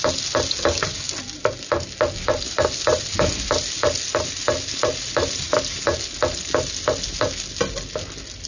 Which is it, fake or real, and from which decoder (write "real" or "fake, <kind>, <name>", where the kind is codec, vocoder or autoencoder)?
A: real